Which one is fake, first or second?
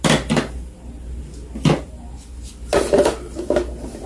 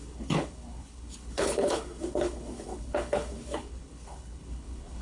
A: second